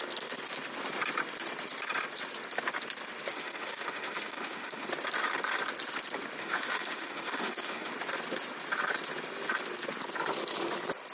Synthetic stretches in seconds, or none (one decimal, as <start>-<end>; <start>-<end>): 3.3-4.9; 6.4-7.9

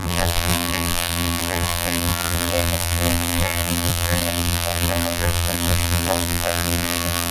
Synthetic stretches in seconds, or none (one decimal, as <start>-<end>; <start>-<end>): 0.0-7.3

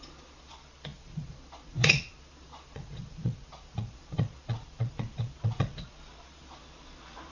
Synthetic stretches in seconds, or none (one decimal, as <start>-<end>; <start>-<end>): 0.0-7.3

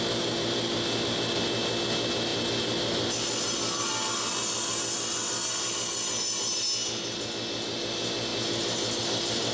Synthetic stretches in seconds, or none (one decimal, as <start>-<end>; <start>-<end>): none

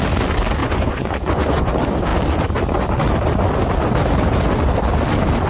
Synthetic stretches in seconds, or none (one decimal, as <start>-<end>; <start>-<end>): 0.6-1.7

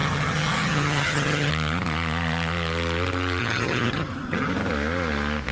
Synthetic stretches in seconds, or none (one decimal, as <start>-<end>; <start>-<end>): 0.0-1.5; 3.4-4.5

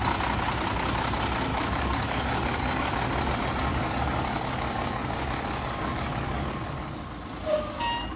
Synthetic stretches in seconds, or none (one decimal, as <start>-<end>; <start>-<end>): 1.5-3.3; 3.7-7.0

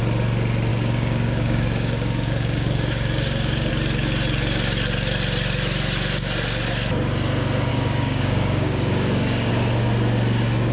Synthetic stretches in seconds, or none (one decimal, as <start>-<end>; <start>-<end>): 0.7-3.7; 7.7-9.5